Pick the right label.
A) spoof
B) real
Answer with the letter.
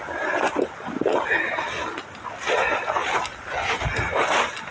B